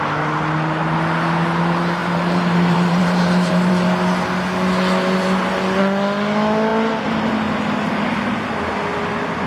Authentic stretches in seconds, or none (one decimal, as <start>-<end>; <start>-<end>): 0.0-2.0; 3.7-9.5